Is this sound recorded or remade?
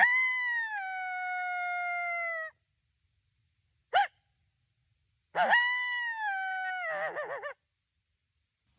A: recorded